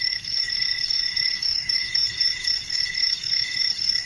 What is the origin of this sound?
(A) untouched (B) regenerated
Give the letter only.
B